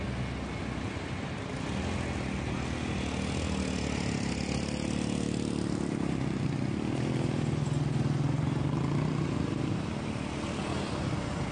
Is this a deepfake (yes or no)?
no